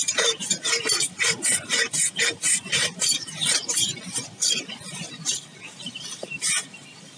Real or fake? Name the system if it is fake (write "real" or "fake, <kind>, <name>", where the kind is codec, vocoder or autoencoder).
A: fake, vocoder, BigVGAN v2